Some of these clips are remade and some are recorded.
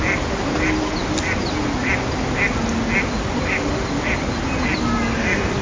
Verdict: recorded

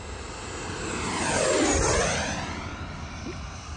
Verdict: recorded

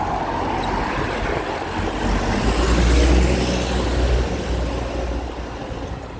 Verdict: recorded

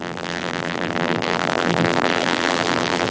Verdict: remade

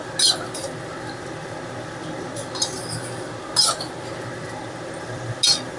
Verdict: recorded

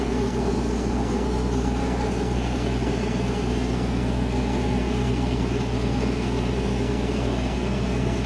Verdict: remade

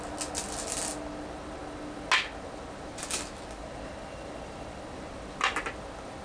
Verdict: recorded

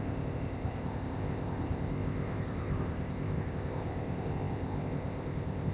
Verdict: remade